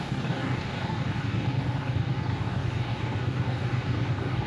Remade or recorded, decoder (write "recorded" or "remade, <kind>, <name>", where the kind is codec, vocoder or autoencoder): remade, codec, DAC